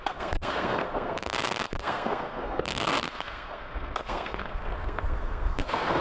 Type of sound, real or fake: fake